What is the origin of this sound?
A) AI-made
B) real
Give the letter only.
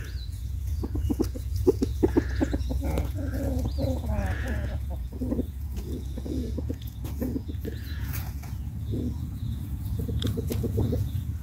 A